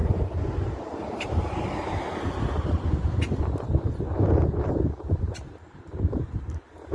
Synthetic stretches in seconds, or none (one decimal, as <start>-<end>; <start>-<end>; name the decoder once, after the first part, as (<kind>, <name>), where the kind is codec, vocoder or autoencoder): 0.8-6.9 (vocoder, BigVGAN v2)